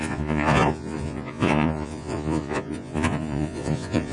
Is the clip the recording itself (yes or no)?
no